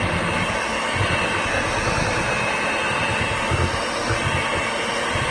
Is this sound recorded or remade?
recorded